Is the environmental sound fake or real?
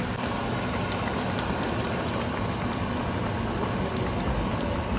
real